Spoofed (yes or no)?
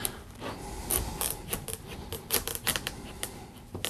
no